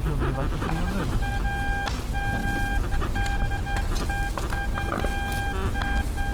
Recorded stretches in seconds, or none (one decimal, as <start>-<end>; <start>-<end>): 0.0-6.3